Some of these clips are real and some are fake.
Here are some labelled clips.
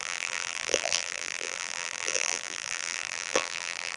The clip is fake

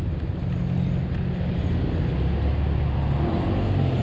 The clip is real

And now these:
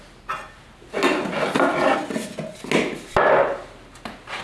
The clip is real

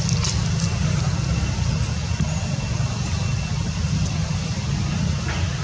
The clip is real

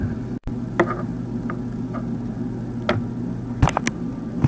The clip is real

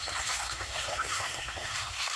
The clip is fake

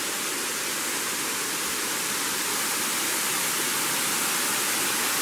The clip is real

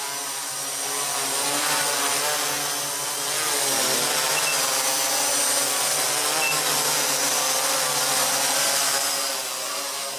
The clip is real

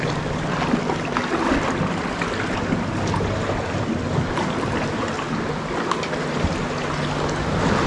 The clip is real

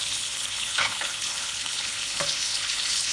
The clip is fake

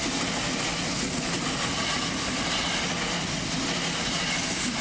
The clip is real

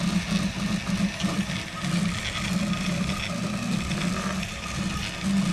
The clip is real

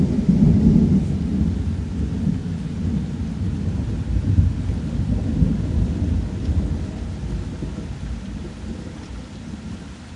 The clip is real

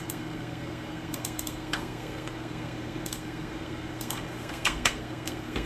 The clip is fake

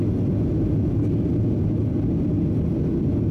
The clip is real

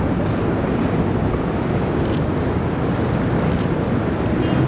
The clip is real